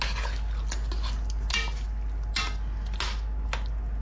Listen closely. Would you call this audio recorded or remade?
recorded